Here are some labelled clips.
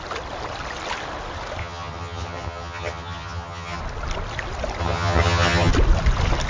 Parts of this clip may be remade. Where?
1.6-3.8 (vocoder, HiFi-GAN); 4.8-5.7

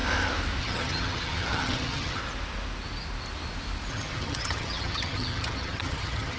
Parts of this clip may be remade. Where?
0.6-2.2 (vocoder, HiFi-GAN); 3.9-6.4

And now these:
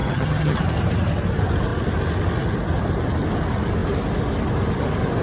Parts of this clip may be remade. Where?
0.0-0.6 (vocoder, HiFi-GAN)

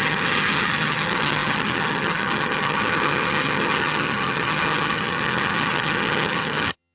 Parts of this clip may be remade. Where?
0.0-6.9 (vocoder, HiFi-GAN)

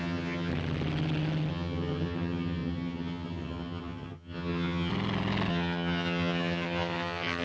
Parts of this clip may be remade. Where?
0.0-0.5 (vocoder, HiFi-GAN); 1.5-4.9; 5.5-7.4

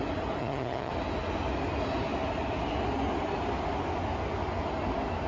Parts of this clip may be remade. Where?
0.4-0.9 (vocoder, HiFi-GAN)

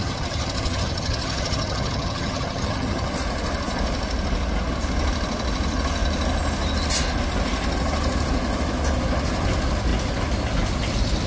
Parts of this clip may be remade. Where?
0.0-3.1 (vocoder, HiFi-GAN)